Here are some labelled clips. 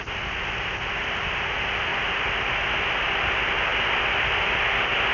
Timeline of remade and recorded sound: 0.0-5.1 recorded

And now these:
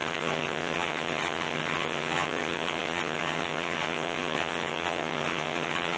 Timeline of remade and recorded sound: 0.0-6.0 remade

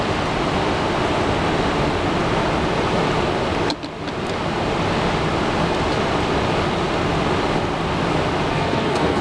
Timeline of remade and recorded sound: 0.0-8.5 recorded; 8.5-9.2 remade